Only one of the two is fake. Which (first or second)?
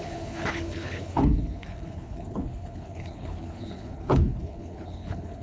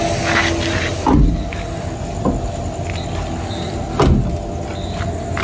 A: first